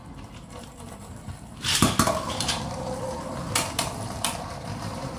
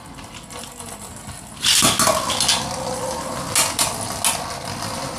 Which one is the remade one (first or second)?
first